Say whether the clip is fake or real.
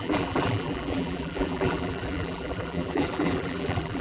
fake